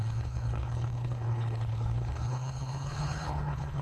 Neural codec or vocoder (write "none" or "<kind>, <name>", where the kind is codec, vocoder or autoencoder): codec, HILCodec